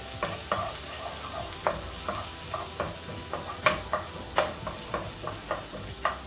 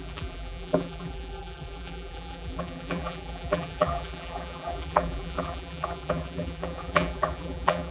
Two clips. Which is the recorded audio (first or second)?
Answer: first